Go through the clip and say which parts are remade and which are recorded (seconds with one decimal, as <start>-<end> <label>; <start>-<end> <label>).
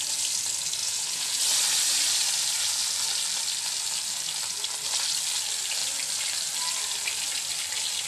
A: 0.0-0.8 recorded; 0.8-1.4 remade; 1.4-8.1 recorded